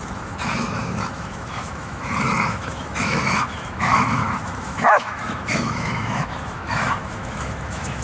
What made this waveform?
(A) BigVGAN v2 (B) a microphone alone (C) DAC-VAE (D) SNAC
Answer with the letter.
C